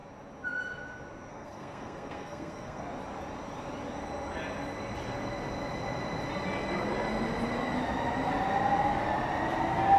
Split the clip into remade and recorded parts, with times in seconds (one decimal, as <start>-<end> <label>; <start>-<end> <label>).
0.0-1.3 recorded; 1.3-2.8 remade; 2.8-10.0 recorded